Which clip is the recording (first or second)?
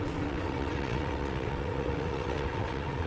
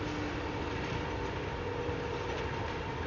second